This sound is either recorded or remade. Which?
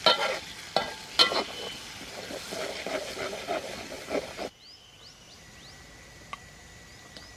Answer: recorded